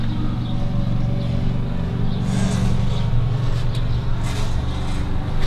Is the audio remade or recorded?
recorded